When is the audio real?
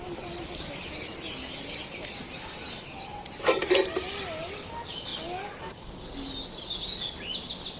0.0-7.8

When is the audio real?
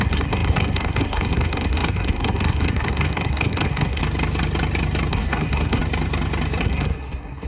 4.0-5.1; 5.8-6.6